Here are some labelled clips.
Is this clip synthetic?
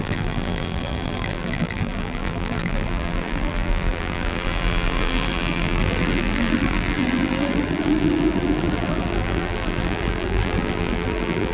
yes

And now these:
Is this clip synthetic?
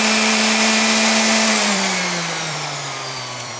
yes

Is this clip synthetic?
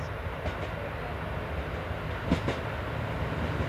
no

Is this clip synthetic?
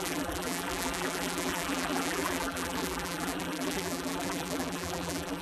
yes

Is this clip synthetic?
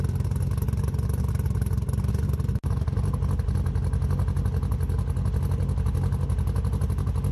no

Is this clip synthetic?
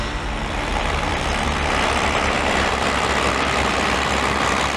yes